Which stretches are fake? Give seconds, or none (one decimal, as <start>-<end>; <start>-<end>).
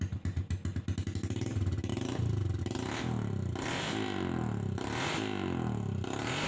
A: none